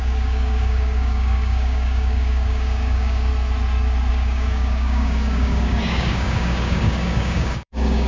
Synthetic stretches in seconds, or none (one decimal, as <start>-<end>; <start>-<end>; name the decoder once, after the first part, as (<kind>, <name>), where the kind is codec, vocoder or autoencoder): 0.0-3.3 (codec, DAC); 4.1-8.1